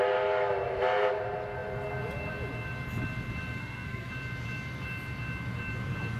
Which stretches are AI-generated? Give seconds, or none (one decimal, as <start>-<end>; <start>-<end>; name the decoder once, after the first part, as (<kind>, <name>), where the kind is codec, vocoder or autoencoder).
3.6-4.1 (codec, SNAC)